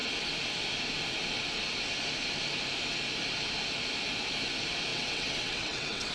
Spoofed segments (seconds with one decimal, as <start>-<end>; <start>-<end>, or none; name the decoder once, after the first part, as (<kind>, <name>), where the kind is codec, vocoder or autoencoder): 4.9-6.1 (vocoder, WaveNeXt)